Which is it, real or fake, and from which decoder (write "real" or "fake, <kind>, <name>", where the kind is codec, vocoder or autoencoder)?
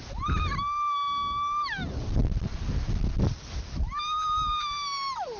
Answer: real